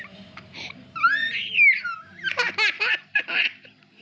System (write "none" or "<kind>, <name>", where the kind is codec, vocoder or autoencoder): none